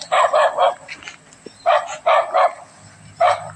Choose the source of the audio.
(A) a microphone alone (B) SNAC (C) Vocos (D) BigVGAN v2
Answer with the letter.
D